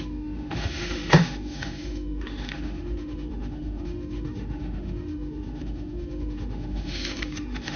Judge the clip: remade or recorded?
remade